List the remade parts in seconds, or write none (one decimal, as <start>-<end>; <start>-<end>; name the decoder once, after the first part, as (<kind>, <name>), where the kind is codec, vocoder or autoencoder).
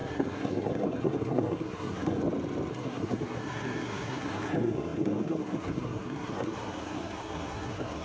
0.0-2.2 (codec, SNAC); 2.7-8.0